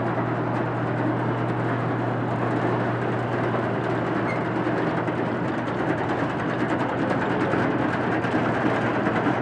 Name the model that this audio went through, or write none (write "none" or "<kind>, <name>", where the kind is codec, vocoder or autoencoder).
none